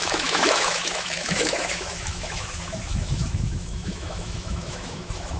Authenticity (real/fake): fake